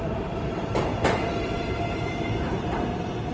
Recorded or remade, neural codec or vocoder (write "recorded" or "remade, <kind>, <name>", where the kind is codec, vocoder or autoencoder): recorded